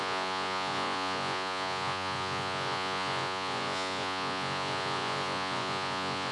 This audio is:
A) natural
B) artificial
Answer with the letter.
B